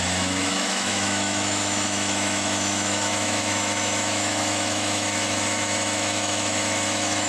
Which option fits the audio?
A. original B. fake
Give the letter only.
B